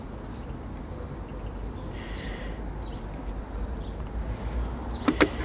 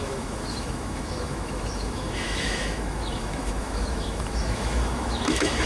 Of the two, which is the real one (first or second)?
first